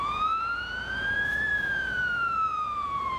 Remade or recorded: remade